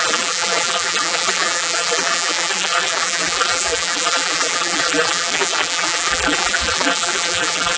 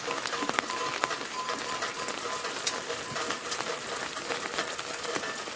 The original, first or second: second